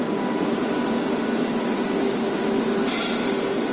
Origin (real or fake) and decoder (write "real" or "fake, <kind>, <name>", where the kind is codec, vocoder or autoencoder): real